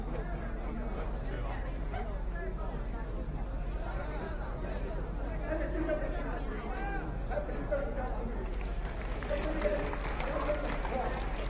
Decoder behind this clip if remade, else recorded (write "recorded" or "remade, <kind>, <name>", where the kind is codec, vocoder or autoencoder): remade, vocoder, BigVGAN v2